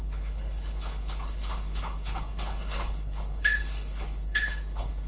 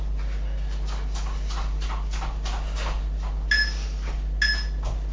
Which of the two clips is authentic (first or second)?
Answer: second